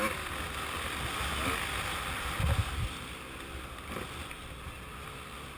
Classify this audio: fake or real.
real